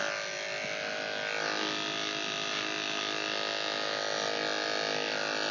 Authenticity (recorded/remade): recorded